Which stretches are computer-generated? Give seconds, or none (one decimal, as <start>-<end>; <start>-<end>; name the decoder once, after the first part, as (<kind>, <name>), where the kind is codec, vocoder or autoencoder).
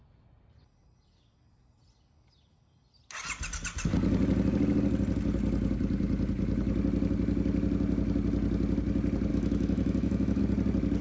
9.3-10.4 (autoencoder, DAC-VAE)